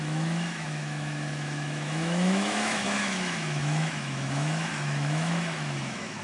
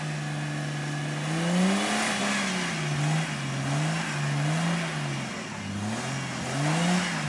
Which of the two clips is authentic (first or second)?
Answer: second